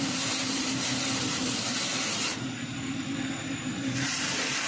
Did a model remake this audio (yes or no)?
yes